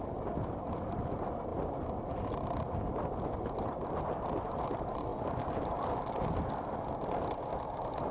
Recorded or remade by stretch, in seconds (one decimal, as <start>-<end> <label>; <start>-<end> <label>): 0.0-8.1 recorded